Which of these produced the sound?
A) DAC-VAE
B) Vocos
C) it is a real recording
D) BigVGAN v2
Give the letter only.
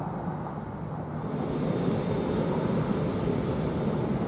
C